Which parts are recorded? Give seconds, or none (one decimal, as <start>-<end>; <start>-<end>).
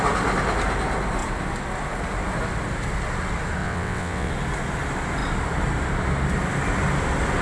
0.0-3.6; 4.3-7.4